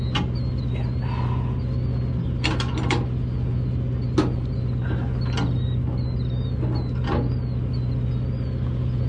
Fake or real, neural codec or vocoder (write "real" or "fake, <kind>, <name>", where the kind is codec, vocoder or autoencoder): real